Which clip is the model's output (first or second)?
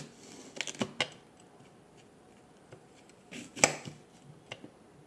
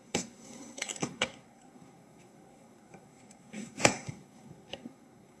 second